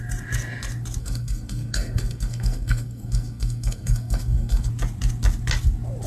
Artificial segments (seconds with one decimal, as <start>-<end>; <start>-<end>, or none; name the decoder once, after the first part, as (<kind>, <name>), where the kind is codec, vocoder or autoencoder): 1.0-4.7 (codec, SNAC)